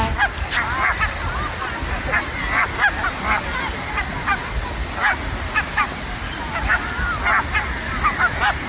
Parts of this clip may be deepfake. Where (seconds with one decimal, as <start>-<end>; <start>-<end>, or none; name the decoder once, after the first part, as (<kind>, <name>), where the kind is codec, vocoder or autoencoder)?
none